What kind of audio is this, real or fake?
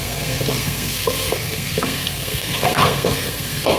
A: fake